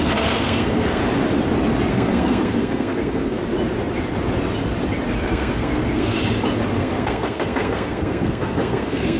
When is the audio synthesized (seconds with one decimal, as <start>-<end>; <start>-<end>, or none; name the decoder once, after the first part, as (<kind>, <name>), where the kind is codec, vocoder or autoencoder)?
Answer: 0.0-1.0 (codec, SNAC); 1.9-3.4; 5.1-6.2; 6.8-9.2